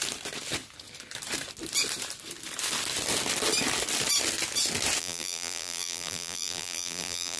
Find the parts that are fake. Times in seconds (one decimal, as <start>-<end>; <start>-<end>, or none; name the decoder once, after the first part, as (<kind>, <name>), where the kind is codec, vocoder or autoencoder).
5.0-7.4 (vocoder, BigVGAN v2)